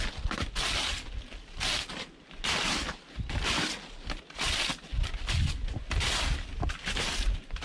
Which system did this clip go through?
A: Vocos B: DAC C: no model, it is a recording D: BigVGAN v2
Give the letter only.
C